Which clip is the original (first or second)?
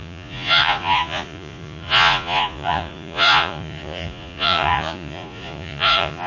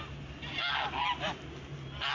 second